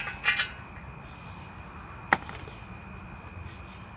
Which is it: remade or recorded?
recorded